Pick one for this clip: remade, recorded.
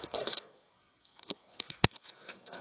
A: remade